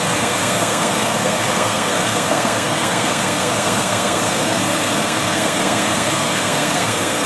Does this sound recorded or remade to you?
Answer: remade